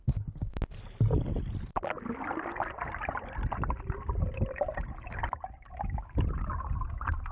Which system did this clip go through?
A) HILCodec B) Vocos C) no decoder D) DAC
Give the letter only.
C